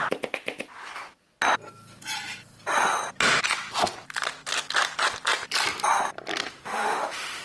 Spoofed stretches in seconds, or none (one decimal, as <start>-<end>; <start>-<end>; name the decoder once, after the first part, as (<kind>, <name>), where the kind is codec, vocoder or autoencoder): 6.4-7.4 (autoencoder, DAC-VAE)